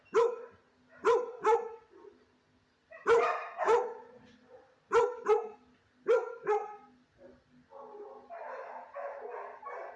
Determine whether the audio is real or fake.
real